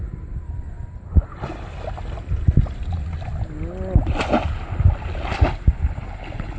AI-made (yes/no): no